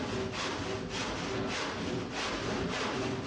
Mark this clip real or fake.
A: real